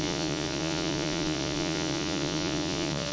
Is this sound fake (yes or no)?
yes